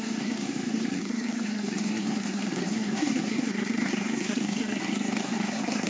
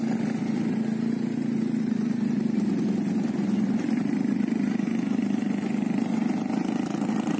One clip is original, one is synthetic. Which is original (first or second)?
second